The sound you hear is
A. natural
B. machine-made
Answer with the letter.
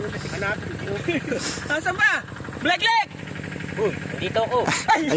A